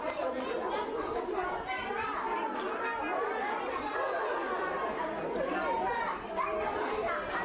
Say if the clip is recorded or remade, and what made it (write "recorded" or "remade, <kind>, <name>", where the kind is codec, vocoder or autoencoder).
recorded